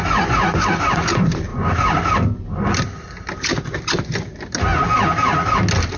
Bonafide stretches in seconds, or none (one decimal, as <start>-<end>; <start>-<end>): 0.0-6.0